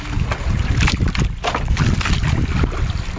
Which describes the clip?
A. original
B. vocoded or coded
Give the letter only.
A